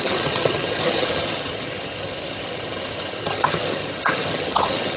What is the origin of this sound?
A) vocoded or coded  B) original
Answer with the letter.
A